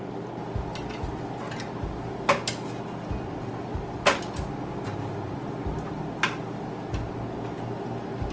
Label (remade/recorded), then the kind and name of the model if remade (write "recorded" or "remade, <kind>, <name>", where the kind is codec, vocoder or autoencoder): recorded